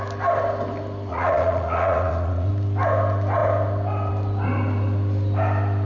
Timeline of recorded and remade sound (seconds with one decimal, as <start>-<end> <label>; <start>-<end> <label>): 0.0-1.1 recorded; 1.1-2.5 remade; 2.5-5.9 recorded